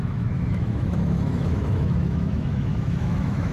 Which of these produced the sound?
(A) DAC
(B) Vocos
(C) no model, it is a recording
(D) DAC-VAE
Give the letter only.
D